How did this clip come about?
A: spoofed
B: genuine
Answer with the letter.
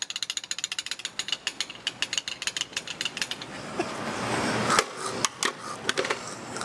B